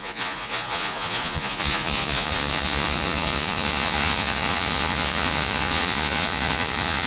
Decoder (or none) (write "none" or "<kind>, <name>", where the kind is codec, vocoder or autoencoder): vocoder, Vocos